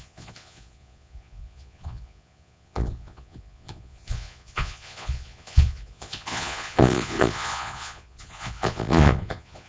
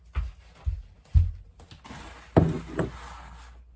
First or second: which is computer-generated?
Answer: first